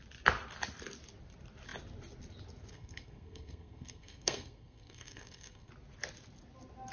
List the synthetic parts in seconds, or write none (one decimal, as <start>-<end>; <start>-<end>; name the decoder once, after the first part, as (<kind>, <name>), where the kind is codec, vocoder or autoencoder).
2.7-5.7 (codec, SNAC)